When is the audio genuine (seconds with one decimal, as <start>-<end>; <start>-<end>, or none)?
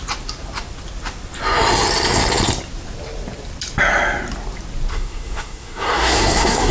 0.0-4.9